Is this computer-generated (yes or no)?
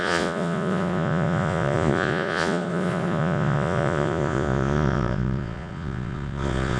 yes